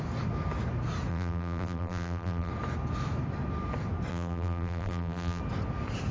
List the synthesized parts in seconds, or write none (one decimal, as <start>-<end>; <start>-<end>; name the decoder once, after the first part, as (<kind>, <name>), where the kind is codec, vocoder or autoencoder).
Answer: 1.1-2.5 (vocoder, BigVGAN v2); 4.1-5.4